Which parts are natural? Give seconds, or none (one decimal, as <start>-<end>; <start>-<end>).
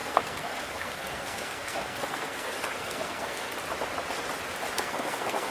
3.6-4.7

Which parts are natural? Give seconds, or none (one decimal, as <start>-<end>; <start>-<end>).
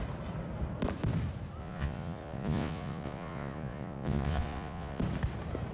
0.0-1.6; 5.0-5.7